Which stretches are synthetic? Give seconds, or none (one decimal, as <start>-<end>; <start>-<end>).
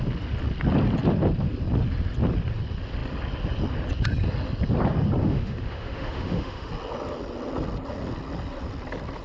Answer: 5.2-6.7